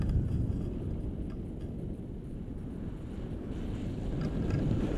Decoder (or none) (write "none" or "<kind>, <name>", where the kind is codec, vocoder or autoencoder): none